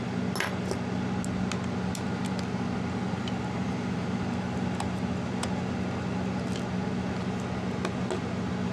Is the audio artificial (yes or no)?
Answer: no